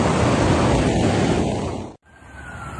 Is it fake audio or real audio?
real